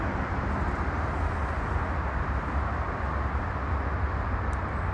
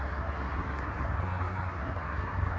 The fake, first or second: second